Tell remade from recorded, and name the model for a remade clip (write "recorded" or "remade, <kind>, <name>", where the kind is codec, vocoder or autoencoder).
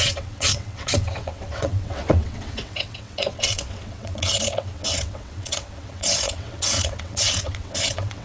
remade, vocoder, WaveNeXt